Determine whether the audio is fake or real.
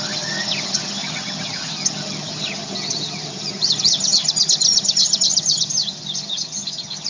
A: fake